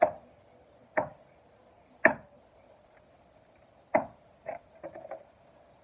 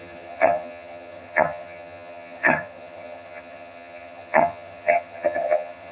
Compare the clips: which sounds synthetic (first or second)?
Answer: second